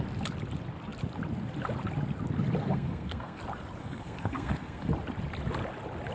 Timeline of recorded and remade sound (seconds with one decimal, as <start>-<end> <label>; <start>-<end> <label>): 0.0-2.6 recorded; 2.6-3.4 remade; 3.4-3.8 recorded; 3.8-4.9 remade; 4.9-6.1 recorded